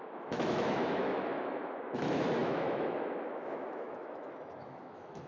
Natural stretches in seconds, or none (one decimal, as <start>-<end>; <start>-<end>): none